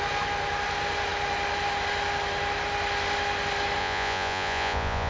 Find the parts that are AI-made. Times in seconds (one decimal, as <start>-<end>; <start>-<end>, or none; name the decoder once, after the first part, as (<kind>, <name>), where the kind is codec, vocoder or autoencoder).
3.8-5.1 (vocoder, Vocos)